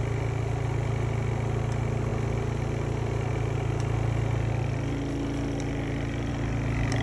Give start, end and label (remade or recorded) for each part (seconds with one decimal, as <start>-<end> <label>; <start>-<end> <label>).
0.0-7.0 recorded